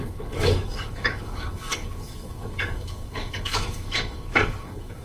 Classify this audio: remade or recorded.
remade